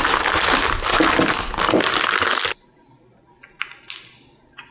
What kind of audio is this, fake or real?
real